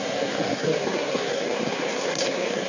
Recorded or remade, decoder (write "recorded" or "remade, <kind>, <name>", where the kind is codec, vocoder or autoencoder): remade, codec, SNAC